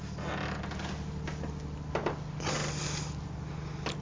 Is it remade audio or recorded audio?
recorded